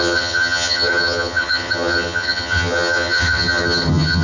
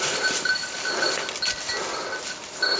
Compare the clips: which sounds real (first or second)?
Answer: second